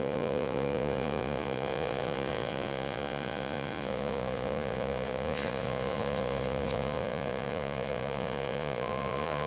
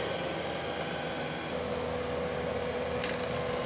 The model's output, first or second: first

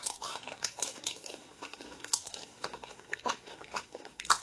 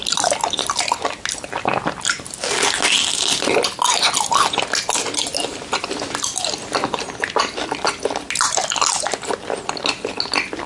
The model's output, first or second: first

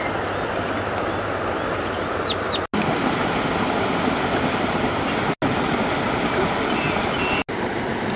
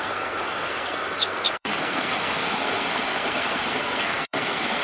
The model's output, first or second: second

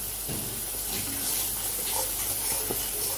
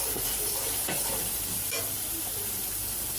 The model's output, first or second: second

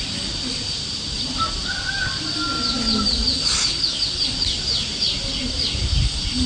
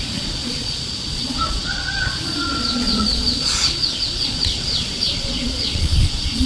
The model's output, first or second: second